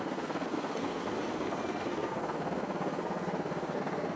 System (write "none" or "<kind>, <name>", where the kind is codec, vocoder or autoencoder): codec, SNAC